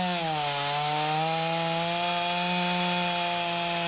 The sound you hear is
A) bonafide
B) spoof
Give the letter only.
A